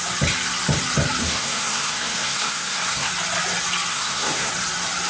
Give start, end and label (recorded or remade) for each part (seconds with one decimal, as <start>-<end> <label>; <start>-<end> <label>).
0.0-1.2 recorded; 1.2-3.1 remade; 3.1-3.9 recorded; 3.9-4.5 remade; 4.5-5.1 recorded